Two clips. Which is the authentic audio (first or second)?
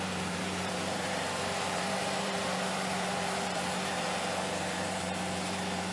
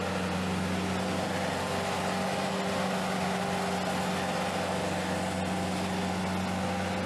second